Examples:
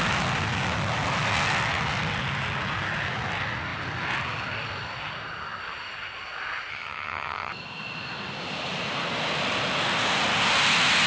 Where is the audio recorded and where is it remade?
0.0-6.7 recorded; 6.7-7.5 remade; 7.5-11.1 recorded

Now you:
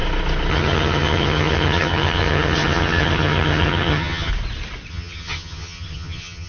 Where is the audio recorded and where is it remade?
0.0-0.5 recorded; 0.5-4.3 remade; 4.3-4.9 recorded; 4.9-6.5 remade

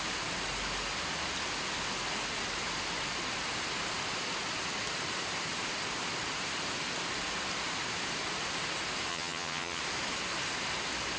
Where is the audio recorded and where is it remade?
0.0-9.1 recorded; 9.1-9.8 remade; 9.8-11.2 recorded